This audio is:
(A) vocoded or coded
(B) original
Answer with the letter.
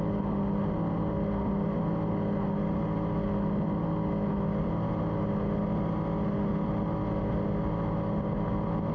B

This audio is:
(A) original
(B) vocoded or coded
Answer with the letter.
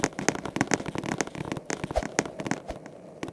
A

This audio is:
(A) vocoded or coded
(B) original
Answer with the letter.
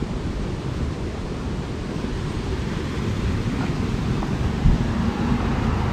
A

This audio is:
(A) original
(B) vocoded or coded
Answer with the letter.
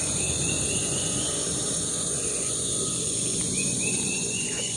B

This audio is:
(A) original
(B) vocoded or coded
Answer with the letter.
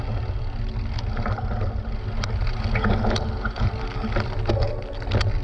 A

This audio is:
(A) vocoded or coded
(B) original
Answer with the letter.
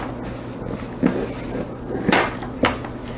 B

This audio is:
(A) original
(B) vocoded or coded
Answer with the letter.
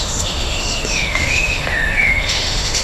B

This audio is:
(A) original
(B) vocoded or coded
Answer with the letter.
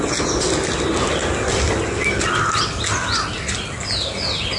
A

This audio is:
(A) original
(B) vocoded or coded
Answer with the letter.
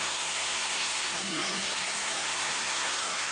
B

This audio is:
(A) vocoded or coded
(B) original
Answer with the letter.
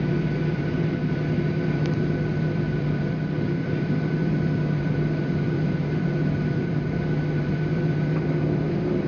A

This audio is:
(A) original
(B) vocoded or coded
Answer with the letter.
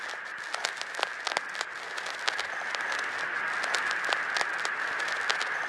A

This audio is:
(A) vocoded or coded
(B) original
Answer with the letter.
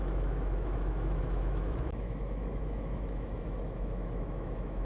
A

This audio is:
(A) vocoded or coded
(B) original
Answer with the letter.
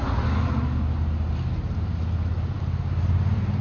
B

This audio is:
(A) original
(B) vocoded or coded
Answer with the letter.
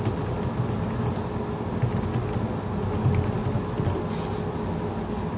A